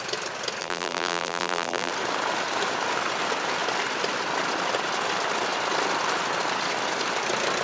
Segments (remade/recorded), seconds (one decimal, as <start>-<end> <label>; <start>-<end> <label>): 0.0-0.6 recorded; 0.6-1.9 remade; 1.9-7.6 recorded